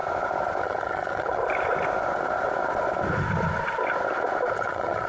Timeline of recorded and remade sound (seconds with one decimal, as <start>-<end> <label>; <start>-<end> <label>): 0.0-0.6 recorded; 0.6-1.4 remade; 1.4-4.5 recorded; 4.5-5.1 remade